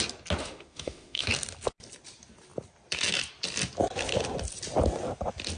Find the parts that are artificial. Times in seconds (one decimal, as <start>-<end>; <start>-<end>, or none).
0.4-1.3